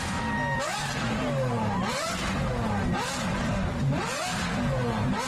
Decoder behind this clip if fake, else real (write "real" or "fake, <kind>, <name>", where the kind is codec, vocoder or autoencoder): real